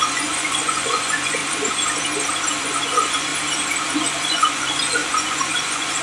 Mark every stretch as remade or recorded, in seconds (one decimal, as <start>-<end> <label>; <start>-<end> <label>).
0.0-1.4 remade; 1.4-2.6 recorded; 2.6-3.3 remade; 3.3-3.9 recorded; 3.9-6.0 remade